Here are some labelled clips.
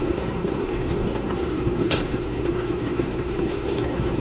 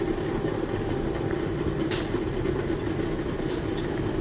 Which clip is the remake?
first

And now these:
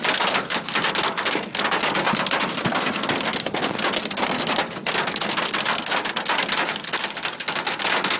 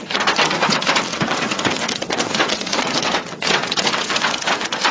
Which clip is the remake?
second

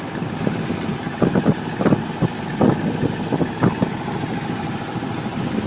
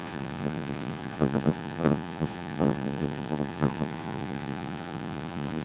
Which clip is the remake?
second